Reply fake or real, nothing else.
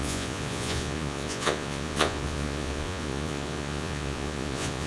fake